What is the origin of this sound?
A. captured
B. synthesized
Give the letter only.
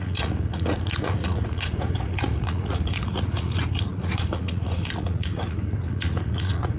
B